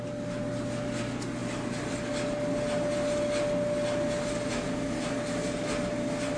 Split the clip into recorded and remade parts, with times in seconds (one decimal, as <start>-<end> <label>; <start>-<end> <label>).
0.0-6.4 recorded